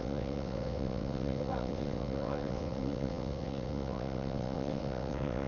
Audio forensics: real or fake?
fake